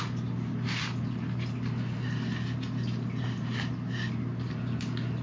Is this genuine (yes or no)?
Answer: yes